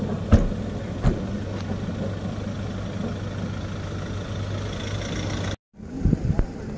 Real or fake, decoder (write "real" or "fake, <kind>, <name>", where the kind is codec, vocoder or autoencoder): real